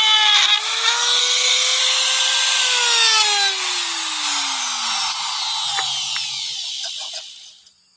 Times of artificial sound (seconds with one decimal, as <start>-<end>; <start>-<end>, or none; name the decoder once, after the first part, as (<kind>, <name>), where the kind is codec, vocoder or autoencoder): 1.2-1.8 (codec, SNAC)